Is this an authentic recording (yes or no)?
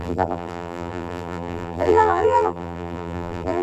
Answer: no